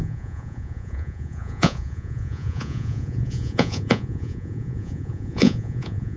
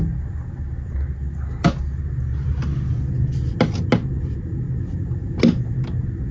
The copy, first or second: first